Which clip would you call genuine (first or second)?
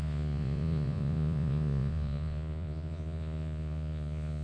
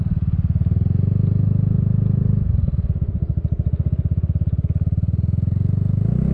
second